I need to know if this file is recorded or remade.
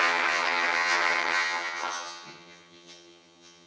remade